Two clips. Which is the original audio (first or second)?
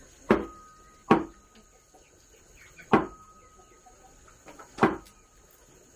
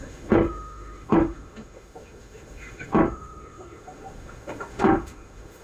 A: first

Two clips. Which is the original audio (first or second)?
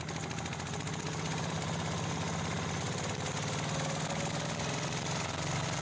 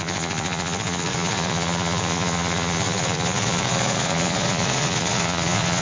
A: first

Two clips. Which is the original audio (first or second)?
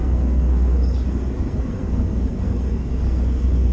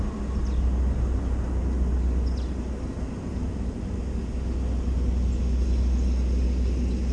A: second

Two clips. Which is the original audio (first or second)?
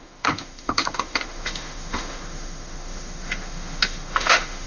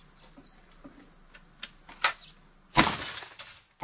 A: second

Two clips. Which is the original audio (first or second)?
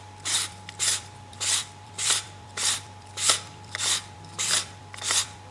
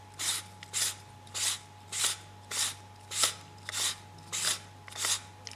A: second